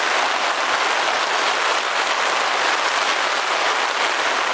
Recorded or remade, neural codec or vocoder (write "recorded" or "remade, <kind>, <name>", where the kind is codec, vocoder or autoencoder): recorded